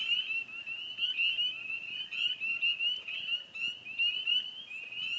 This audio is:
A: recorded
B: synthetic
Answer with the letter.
A